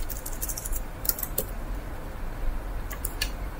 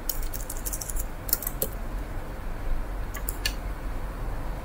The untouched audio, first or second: second